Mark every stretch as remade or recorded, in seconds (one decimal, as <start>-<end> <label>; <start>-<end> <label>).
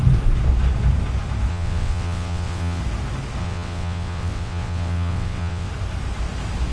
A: 0.0-1.5 recorded; 1.5-2.8 remade; 2.8-3.4 recorded; 3.4-5.7 remade; 5.7-6.7 recorded